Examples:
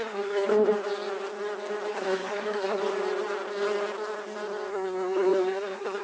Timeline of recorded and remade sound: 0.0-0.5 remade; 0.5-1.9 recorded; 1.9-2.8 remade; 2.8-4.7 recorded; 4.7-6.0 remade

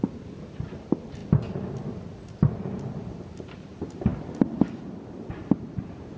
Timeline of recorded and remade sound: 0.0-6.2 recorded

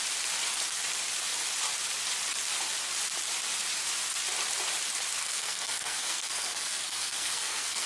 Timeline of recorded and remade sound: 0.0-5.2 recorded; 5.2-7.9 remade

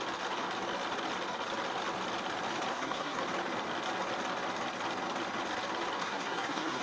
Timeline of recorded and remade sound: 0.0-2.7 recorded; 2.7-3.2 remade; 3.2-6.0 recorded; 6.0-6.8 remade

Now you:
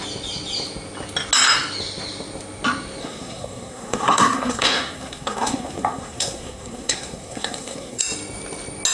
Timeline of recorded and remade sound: 0.0-3.0 recorded; 3.0-8.0 remade; 8.0-8.9 recorded

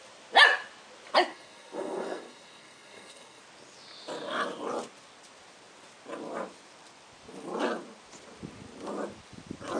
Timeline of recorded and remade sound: 0.0-1.3 recorded; 1.3-3.4 remade; 3.4-9.8 recorded

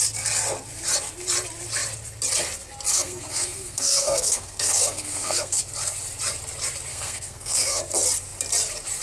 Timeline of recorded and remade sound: 0.0-2.9 recorded; 2.9-5.6 remade; 5.6-6.9 recorded; 6.9-7.8 remade; 7.8-9.0 recorded

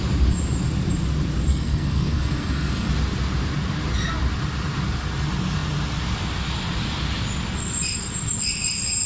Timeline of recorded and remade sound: 0.0-1.5 recorded; 1.5-2.9 remade; 2.9-9.1 recorded